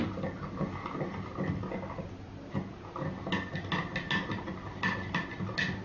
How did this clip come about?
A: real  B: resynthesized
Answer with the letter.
A